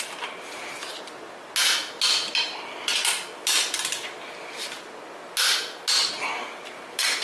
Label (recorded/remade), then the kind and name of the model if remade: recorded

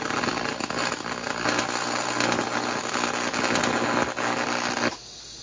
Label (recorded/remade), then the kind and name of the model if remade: recorded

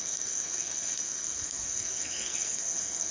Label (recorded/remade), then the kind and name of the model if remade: remade, codec, SNAC